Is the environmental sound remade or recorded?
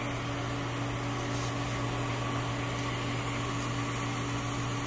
recorded